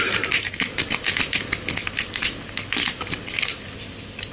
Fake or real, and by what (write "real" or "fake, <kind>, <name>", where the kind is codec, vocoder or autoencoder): real